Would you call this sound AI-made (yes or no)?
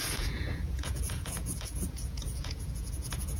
yes